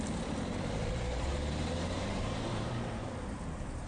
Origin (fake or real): fake